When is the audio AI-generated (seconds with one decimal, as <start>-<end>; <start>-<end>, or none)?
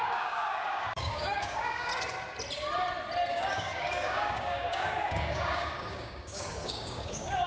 0.0-1.9; 3.3-7.5